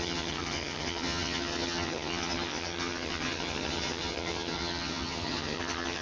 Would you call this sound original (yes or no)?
no